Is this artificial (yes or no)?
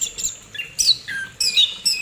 no